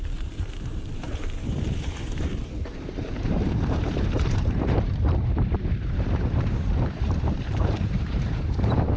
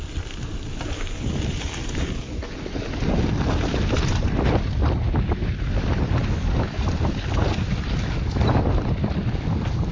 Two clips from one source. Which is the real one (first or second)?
second